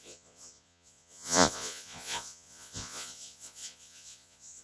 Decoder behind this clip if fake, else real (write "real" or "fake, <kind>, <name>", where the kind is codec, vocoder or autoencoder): fake, vocoder, Vocos